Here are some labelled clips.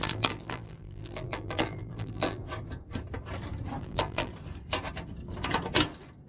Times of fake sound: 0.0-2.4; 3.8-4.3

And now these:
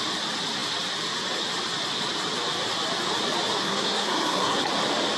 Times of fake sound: 3.6-4.6

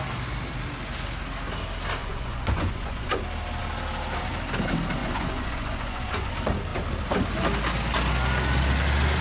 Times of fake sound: 2.0-3.2; 5.0-6.3

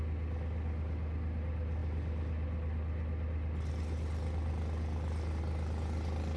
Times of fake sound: none

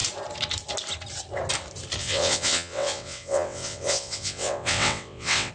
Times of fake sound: 2.0-5.5

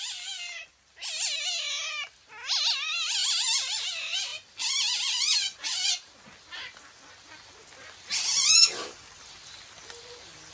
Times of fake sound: none

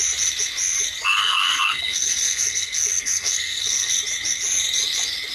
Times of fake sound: 1.2-3.9